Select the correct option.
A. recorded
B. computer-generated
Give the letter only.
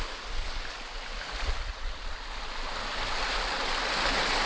A